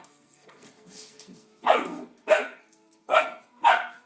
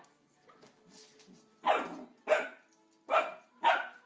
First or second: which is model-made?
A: first